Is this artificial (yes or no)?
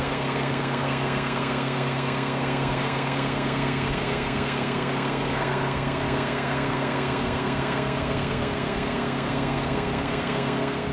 yes